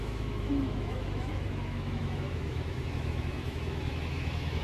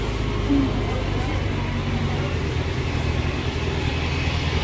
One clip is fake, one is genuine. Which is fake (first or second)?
first